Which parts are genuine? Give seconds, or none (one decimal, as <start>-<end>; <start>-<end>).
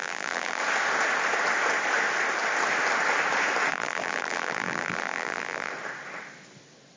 0.6-3.7; 5.7-7.0